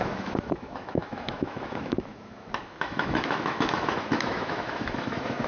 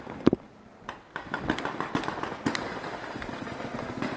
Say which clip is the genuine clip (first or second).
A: second